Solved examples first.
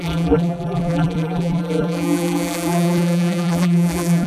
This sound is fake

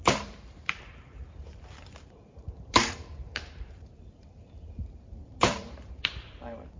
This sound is fake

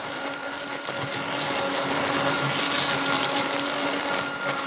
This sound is real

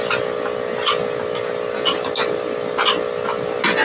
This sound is real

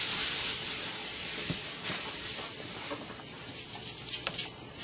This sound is fake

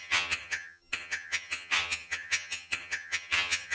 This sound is fake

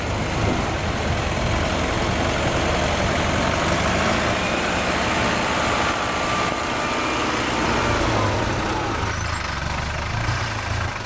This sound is real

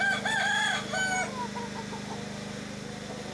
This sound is real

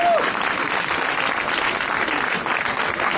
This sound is real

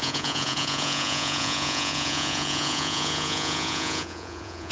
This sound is fake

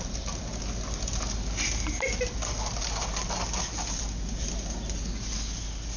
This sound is real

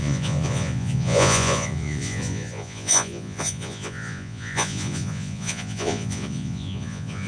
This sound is fake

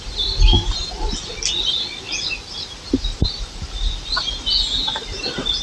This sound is real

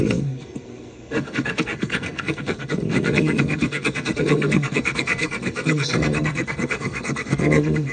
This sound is fake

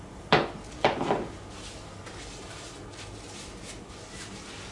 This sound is real